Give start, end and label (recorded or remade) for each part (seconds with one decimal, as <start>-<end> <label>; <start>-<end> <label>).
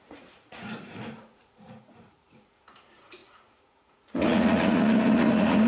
0.0-5.7 remade